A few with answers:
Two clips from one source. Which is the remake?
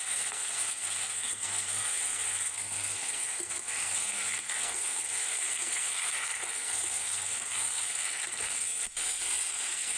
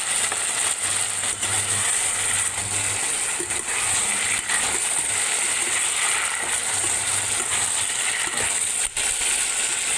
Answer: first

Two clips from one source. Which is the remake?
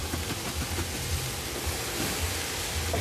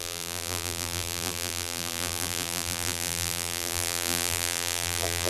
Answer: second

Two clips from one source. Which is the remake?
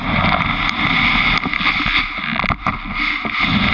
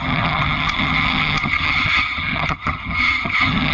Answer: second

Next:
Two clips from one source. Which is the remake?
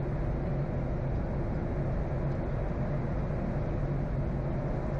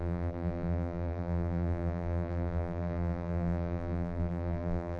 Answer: second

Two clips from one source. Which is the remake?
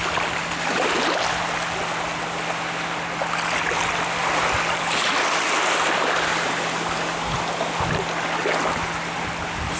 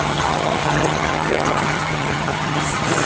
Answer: second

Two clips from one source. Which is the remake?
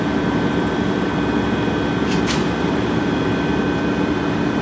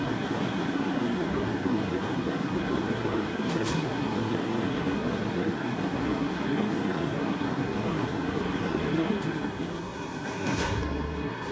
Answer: second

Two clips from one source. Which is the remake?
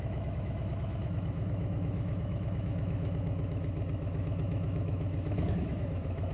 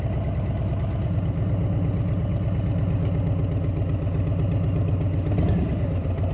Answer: first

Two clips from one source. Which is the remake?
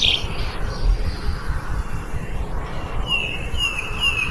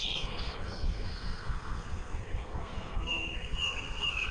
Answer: second